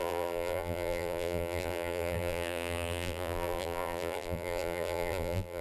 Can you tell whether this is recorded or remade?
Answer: remade